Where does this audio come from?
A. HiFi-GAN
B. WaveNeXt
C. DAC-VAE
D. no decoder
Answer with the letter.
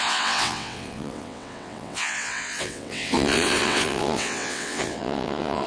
B